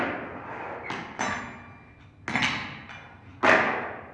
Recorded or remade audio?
recorded